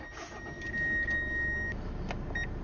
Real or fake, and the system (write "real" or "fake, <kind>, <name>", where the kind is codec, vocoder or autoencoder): real